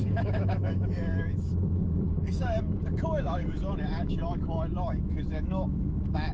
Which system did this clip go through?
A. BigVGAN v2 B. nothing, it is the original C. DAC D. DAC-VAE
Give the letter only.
D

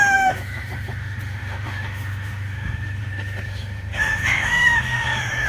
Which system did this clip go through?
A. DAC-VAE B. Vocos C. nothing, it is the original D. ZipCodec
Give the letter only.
A